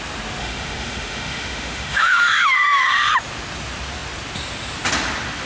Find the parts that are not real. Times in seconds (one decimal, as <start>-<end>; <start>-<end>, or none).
0.4-3.2